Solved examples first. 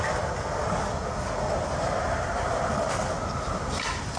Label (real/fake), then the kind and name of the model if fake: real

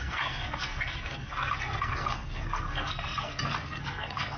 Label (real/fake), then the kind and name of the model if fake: fake, codec, SNAC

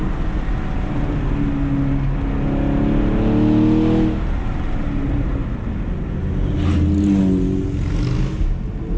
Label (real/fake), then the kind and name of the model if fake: real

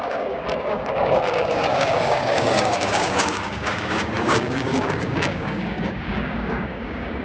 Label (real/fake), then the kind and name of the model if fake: fake, codec, DAC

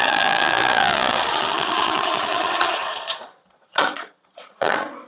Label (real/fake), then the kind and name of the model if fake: fake, vocoder, Vocos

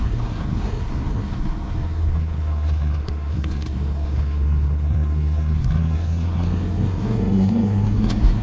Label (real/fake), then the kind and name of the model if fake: fake, codec, SNAC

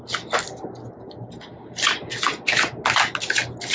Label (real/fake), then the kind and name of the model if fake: real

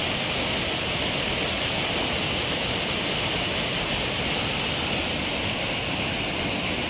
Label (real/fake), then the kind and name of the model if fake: real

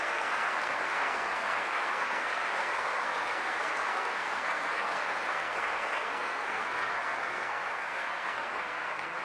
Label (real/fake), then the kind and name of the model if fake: fake, codec, SNAC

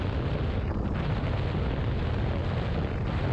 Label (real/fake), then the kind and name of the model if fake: real